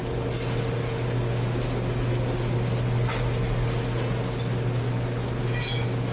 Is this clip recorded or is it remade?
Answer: recorded